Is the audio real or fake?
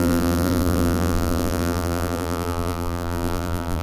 fake